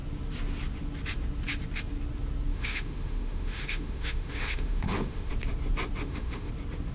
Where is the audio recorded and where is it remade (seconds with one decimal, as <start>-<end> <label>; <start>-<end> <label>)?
0.0-2.5 recorded; 2.5-5.3 remade; 5.3-6.0 recorded; 6.0-6.5 remade; 6.5-6.9 recorded